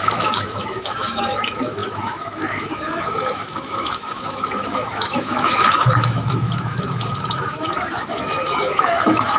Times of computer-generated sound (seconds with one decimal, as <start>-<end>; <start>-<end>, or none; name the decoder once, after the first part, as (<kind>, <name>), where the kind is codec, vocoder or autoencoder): 0.0-9.4 (autoencoder, DAC-VAE)